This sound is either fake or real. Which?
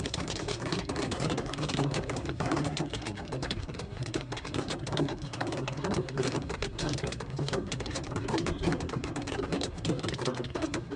fake